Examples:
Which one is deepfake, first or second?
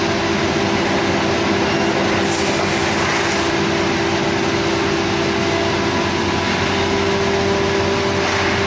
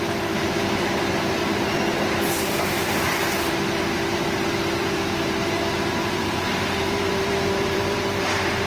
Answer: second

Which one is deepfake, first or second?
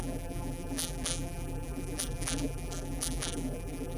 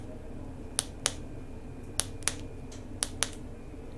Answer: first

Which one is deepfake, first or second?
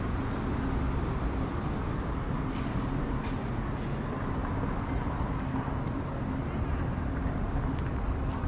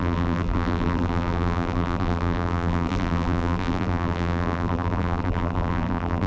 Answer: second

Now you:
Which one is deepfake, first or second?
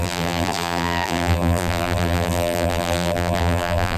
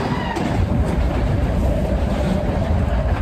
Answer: first